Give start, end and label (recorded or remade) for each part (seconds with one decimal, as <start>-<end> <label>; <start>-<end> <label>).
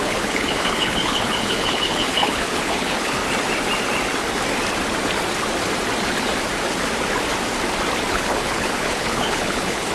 0.0-3.2 remade; 3.2-8.1 recorded; 8.1-9.9 remade